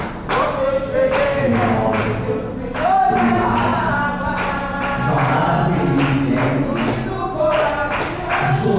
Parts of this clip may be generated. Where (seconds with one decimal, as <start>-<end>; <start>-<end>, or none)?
1.3-2.0